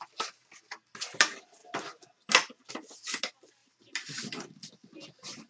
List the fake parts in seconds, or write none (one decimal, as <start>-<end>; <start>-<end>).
none